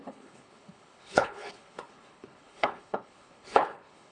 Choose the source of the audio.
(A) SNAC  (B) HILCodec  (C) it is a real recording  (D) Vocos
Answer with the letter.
B